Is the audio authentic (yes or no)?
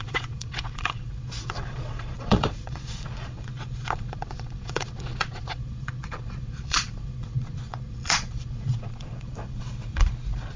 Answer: no